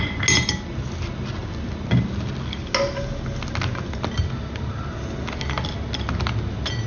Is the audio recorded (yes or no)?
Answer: yes